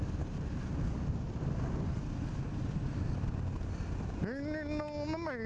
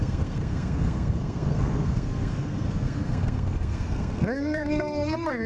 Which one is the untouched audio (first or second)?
first